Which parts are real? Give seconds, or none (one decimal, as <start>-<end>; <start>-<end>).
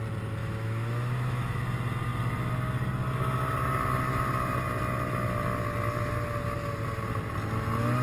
0.0-0.4; 1.6-8.0